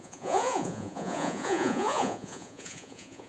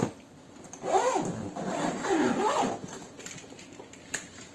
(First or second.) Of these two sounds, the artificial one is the first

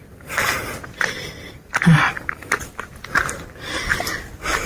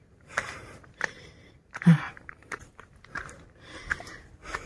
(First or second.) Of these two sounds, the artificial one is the second